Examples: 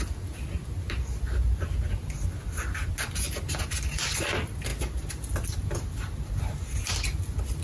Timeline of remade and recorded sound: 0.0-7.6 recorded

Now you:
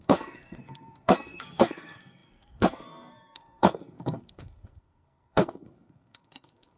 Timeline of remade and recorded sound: 0.0-6.8 remade